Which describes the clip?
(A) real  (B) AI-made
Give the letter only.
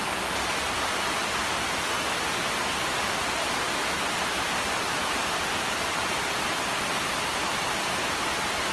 A